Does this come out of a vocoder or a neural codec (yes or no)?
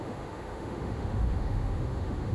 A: yes